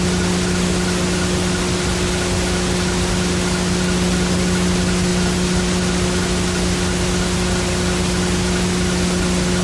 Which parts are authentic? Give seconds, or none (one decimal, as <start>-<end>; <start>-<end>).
0.0-9.6